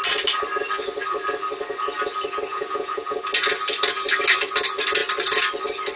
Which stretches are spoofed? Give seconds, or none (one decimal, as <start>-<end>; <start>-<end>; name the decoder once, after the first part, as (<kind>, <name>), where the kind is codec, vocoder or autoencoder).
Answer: 2.5-3.2 (vocoder, Vocos)